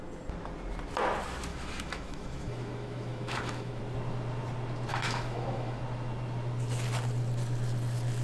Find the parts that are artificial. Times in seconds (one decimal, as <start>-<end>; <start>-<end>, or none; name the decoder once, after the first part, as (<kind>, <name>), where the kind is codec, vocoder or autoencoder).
1.5-3.8 (autoencoder, DAC-VAE); 4.9-5.8